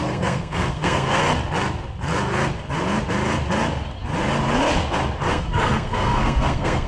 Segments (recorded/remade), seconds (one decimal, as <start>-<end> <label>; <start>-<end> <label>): 0.0-1.2 remade; 1.2-5.3 recorded; 5.3-6.9 remade